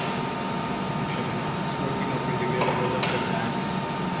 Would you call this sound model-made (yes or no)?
no